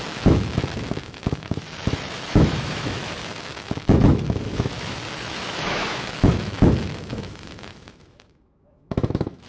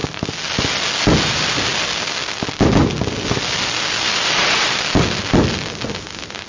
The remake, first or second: first